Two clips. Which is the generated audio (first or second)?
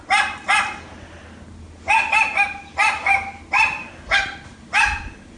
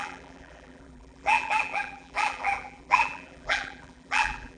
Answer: second